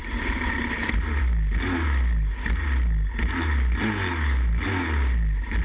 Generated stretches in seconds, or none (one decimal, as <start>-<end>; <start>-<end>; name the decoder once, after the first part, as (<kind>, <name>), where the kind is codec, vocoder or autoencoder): none

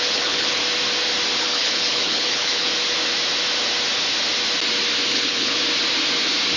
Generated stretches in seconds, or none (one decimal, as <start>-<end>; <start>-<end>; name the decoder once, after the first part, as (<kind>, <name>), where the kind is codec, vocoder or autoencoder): 0.0-0.6 (codec, HILCodec); 1.4-2.7; 5.1-5.6

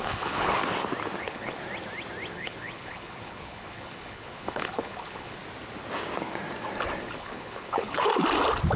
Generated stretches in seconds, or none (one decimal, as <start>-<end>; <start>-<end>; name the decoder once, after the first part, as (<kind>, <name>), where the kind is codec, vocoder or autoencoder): 0.0-0.6 (codec, HILCodec); 1.2-1.6; 2.3-5.4; 7.2-8.1

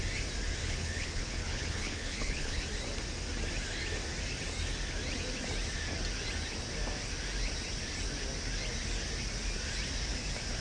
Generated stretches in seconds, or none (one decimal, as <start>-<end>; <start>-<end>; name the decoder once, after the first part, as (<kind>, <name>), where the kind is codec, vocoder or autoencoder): 0.6-2.6 (codec, HILCodec)

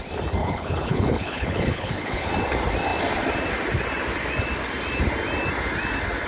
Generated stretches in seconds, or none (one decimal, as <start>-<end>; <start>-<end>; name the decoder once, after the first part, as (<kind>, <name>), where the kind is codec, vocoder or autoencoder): 0.4-2.3 (codec, HILCodec)

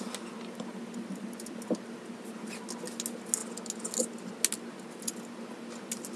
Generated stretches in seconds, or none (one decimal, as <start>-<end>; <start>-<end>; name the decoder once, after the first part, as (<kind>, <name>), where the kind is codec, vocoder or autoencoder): none

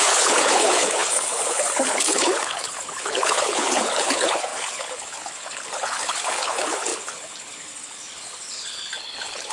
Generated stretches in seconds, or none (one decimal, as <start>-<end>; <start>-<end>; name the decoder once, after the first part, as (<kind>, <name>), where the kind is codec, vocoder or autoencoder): 0.0-9.5 (codec, HILCodec)

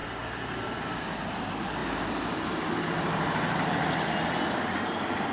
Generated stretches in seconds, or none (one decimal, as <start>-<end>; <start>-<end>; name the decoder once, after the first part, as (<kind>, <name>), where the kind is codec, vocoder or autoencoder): none